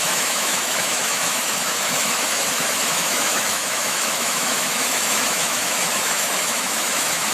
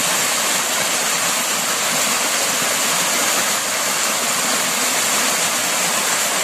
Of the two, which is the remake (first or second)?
first